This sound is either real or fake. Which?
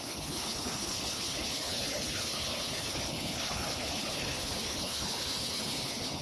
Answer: fake